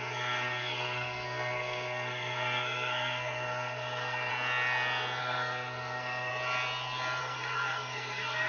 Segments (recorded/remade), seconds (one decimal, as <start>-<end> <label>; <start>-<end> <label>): 0.0-4.3 remade; 4.3-5.2 recorded; 5.2-6.3 remade; 6.3-7.2 recorded; 7.2-8.5 remade